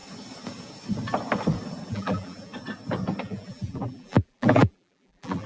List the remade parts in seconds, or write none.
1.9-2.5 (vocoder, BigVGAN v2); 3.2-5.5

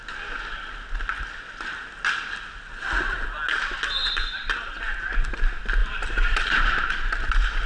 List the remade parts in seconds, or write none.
4.0-4.5 (vocoder, BigVGAN v2); 5.8-7.3

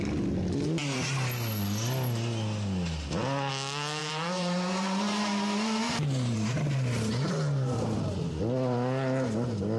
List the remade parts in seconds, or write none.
4.0-8.4 (vocoder, BigVGAN v2)

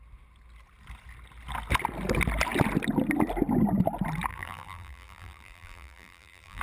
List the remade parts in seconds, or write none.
4.3-6.6 (vocoder, BigVGAN v2)

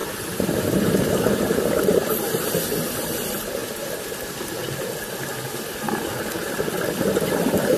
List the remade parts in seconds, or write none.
0.0-2.5 (vocoder, BigVGAN v2)

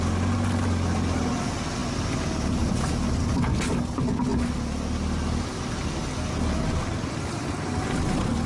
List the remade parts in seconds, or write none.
none

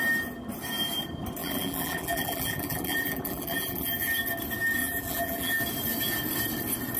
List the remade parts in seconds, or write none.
1.4-3.9 (vocoder, BigVGAN v2); 4.8-5.6

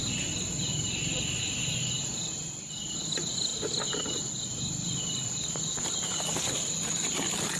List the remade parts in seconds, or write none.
0.7-1.4 (vocoder, BigVGAN v2)